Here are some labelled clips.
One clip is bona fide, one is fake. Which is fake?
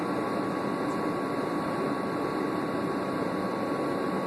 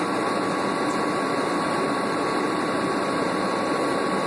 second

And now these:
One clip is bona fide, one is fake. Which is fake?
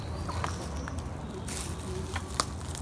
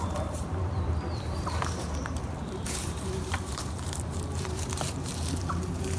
second